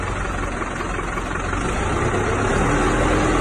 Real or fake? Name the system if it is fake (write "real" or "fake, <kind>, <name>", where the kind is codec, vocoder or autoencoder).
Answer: real